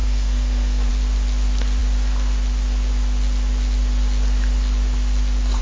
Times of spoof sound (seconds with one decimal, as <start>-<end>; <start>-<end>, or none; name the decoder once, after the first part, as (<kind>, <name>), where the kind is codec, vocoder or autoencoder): 0.0-0.9 (codec, SNAC)